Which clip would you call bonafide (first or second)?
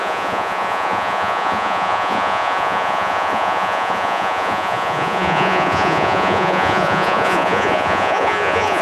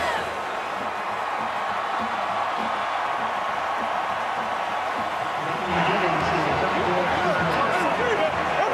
second